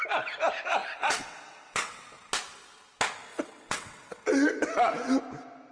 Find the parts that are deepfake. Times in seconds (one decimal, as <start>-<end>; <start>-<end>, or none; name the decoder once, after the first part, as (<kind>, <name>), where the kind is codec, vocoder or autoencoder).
0.8-2.0 (vocoder, WaveNeXt); 3.3-5.2